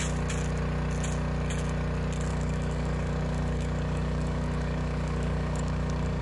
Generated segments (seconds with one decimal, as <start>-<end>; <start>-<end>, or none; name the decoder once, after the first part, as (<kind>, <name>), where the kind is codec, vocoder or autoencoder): 2.3-6.2 (codec, DAC)